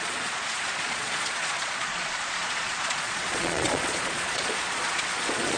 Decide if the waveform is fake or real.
fake